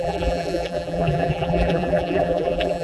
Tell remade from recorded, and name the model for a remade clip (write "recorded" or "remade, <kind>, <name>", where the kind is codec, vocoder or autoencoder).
remade, vocoder, BigVGAN v2